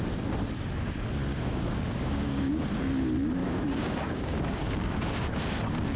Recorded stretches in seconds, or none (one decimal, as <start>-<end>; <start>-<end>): 0.0-1.3; 2.5-3.4; 5.4-6.0